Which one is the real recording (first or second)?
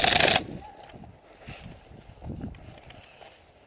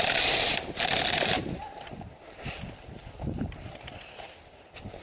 first